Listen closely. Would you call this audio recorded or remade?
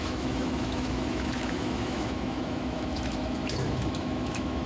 remade